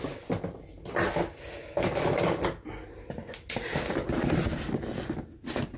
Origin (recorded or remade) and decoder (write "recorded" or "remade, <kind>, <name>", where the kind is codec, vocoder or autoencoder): recorded